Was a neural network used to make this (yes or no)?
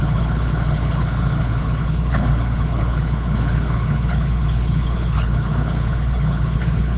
yes